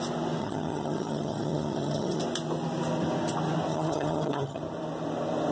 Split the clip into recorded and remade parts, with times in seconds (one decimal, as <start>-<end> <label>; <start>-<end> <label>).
0.0-0.4 recorded; 0.4-2.2 remade; 2.2-3.7 recorded; 3.7-4.6 remade; 4.6-5.5 recorded